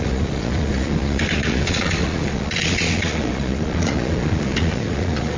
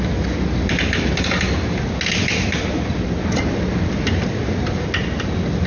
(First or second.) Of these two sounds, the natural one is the second